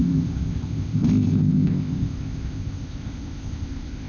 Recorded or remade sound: remade